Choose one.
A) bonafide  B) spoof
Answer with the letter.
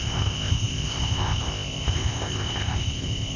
B